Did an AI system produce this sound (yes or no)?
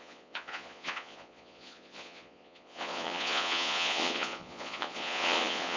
yes